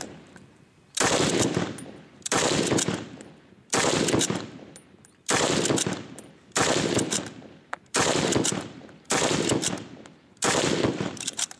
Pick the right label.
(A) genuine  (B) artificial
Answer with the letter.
B